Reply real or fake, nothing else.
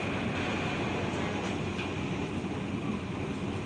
real